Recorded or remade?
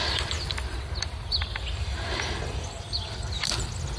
recorded